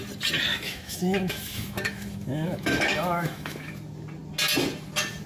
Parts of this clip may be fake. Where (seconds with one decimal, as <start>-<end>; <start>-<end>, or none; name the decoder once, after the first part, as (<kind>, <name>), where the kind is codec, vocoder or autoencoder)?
0.5-3.7 (autoencoder, DAC-VAE)